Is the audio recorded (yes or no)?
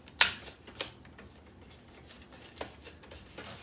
yes